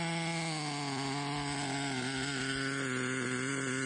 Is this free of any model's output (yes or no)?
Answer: yes